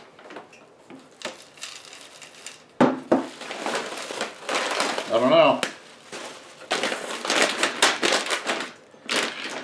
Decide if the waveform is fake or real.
real